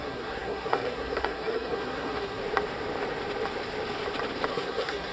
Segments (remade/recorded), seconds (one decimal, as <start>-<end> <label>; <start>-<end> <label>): 0.0-2.4 remade; 2.4-4.5 recorded; 4.5-5.1 remade